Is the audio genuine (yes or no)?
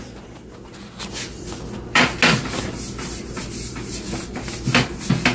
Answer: yes